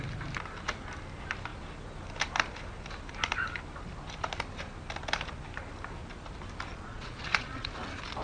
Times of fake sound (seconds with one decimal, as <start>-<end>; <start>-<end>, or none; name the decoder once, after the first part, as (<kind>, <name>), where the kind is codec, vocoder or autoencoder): 6.7-7.7 (vocoder, Vocos)